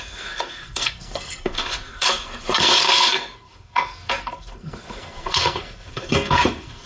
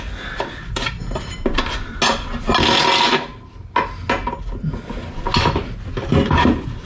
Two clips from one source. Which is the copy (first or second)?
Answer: first